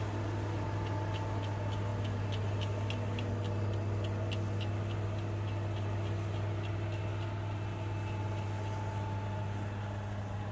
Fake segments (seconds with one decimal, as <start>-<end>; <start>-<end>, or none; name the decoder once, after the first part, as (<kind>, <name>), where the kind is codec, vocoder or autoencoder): none